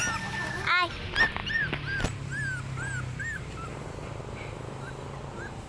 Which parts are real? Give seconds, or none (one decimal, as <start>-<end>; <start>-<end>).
0.0-5.7